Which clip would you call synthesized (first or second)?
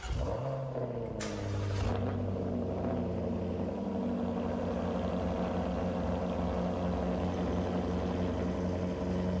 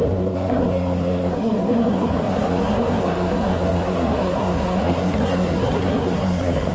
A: second